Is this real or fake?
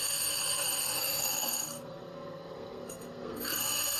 fake